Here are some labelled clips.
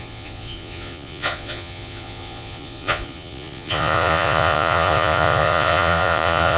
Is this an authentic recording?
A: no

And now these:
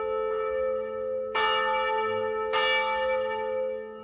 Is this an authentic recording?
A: yes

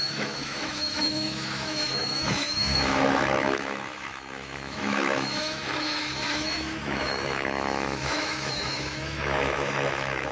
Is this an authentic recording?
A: no